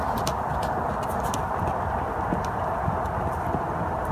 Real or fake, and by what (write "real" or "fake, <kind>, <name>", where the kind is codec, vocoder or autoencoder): real